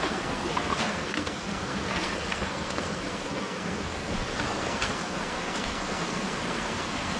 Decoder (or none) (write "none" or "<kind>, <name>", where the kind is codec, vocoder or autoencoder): codec, SNAC